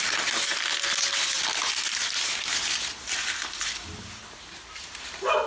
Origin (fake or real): real